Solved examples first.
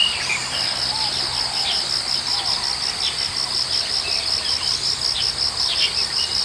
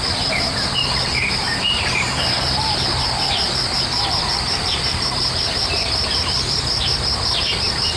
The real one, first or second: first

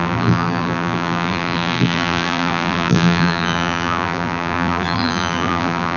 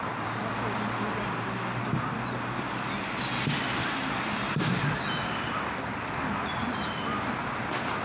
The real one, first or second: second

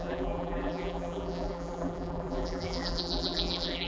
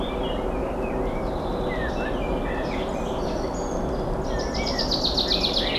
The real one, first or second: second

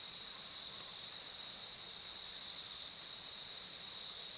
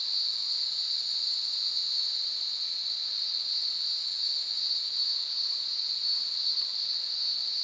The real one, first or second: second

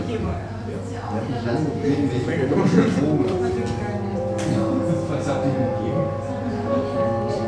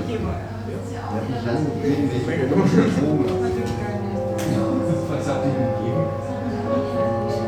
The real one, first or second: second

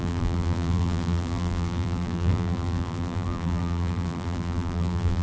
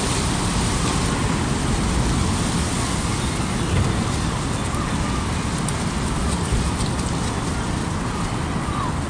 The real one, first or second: second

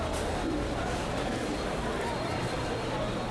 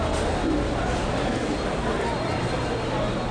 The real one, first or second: second